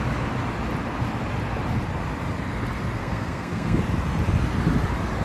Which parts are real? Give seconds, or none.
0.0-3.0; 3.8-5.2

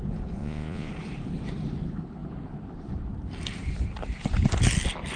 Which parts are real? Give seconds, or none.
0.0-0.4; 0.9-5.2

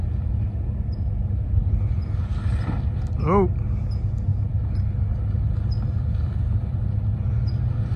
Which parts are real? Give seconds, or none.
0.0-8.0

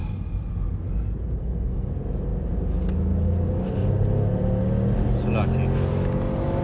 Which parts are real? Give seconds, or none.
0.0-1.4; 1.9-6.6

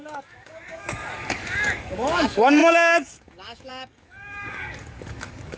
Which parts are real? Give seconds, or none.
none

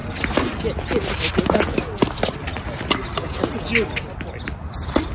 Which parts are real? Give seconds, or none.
0.0-5.1